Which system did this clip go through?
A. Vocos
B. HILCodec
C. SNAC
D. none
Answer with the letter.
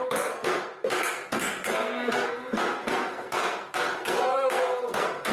C